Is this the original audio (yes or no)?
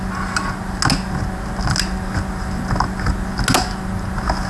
yes